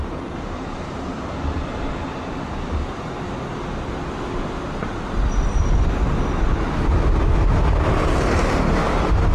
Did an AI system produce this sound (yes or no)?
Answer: no